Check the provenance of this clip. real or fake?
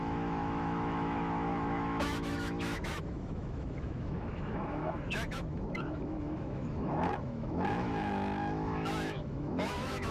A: fake